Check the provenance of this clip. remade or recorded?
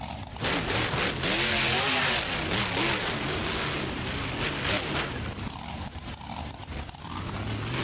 recorded